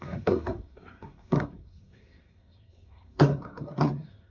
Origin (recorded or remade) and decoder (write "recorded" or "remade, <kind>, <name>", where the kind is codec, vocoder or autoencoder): remade, codec, SNAC